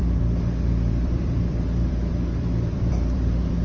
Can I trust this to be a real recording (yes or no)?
no